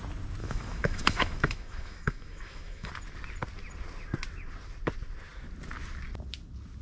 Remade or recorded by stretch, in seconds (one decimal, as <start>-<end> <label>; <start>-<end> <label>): 0.0-0.4 recorded; 0.4-2.9 remade; 2.9-6.8 recorded